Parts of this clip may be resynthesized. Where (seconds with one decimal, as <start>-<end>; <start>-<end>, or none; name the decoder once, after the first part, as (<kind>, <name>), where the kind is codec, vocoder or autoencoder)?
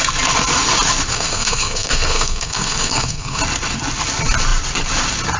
1.1-3.4 (codec, SNAC)